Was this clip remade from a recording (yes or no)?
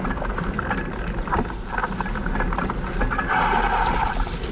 no